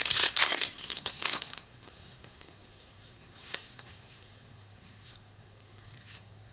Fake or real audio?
fake